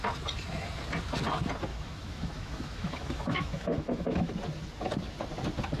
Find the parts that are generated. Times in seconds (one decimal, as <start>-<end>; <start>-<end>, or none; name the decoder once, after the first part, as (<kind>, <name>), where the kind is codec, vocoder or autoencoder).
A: 1.7-4.3 (autoencoder, DAC-VAE)

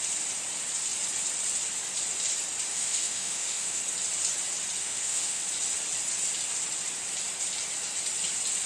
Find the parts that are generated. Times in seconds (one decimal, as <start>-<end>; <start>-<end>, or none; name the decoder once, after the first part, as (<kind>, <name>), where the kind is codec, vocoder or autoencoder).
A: 2.7-3.8 (autoencoder, DAC-VAE); 4.8-5.4

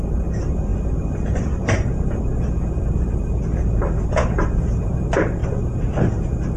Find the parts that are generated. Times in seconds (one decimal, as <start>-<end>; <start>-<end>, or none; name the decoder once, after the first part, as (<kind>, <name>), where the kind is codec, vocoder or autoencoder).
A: 0.0-6.6 (vocoder, BigVGAN v2)

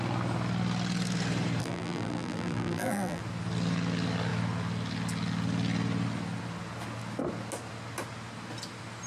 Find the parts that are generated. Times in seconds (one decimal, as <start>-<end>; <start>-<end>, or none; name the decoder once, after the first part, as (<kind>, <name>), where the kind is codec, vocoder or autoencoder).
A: 1.6-3.2 (vocoder, BigVGAN v2)